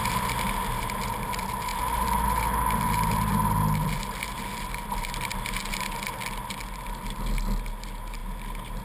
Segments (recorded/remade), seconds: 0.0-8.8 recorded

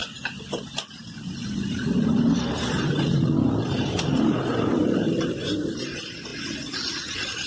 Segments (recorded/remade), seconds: 0.0-6.3 remade; 6.3-7.5 recorded

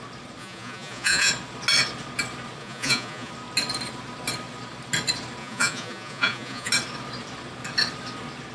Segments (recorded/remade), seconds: 0.0-0.4 recorded; 0.4-1.3 remade; 1.3-2.6 recorded; 2.6-3.3 remade; 3.3-5.4 recorded; 5.4-6.7 remade; 6.7-8.5 recorded

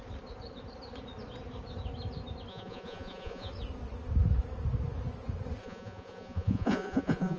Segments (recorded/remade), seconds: 0.0-2.5 recorded; 2.5-3.5 remade; 3.5-5.6 recorded; 5.6-7.4 remade

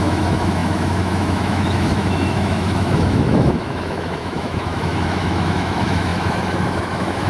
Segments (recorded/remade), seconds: 0.0-7.3 remade